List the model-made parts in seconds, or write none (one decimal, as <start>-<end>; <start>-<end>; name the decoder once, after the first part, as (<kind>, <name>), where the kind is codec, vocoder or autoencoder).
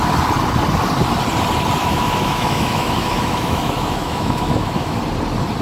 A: 1.8-5.0 (autoencoder, DAC-VAE)